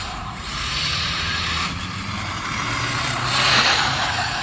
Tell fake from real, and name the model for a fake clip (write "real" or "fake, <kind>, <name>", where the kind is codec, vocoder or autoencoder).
fake, vocoder, BigVGAN v2